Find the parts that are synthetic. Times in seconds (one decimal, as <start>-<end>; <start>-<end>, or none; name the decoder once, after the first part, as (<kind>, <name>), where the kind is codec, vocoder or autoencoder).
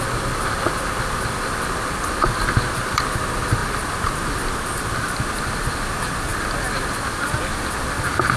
none